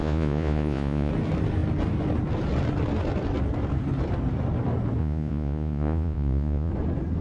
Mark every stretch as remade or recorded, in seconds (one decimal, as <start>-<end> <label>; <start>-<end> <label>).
0.0-1.1 remade; 1.1-5.0 recorded; 5.0-6.7 remade; 6.7-7.2 recorded